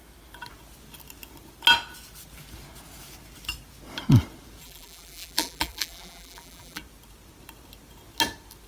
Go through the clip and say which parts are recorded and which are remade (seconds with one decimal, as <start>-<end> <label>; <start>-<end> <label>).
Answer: 0.0-4.6 recorded; 4.6-6.8 remade; 6.8-8.7 recorded